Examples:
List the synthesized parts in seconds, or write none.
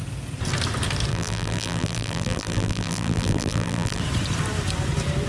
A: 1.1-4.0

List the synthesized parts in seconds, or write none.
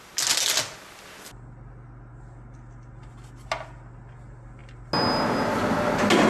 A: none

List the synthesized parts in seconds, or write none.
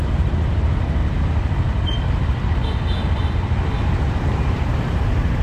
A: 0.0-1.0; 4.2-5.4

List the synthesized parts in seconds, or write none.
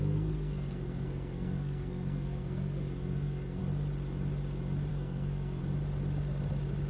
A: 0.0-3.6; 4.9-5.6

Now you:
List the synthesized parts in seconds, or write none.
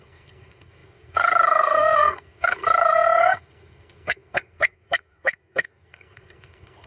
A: 0.0-6.9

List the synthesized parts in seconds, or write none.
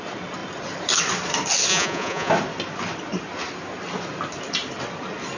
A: 1.7-2.3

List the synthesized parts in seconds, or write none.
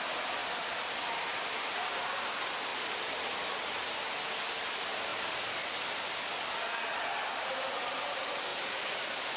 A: 0.4-2.2; 2.7-3.7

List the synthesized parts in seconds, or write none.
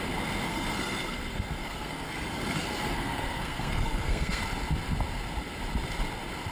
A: 0.5-4.4